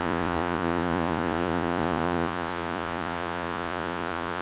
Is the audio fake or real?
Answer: fake